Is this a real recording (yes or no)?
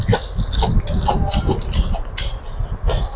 yes